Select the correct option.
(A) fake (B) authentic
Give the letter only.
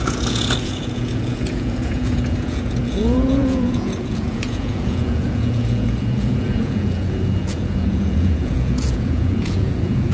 A